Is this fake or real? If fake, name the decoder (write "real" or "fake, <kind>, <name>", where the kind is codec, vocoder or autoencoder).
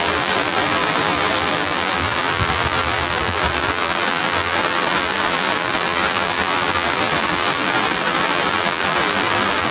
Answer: fake, vocoder, BigVGAN v2